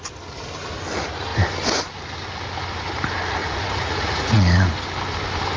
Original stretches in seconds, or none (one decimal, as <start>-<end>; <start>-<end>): 0.0-3.4; 4.7-5.6